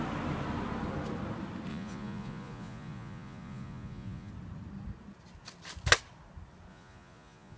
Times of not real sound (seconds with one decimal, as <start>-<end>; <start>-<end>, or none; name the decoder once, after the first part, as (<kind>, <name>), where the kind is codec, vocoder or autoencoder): 1.7-4.3 (vocoder, Vocos); 6.7-7.6